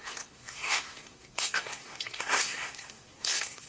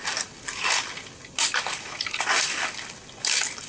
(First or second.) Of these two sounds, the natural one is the second